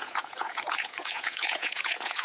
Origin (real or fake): fake